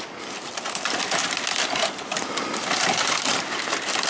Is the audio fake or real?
real